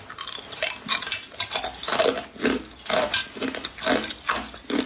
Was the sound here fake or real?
real